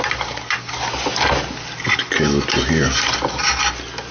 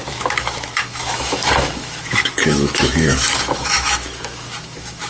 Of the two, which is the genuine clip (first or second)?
first